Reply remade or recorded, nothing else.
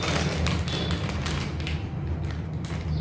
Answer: recorded